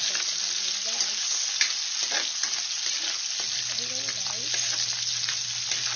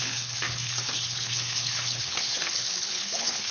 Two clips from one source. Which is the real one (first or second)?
first